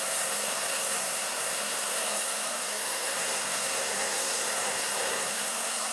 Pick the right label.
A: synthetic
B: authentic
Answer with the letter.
A